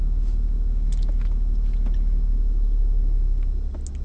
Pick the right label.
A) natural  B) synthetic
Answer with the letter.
A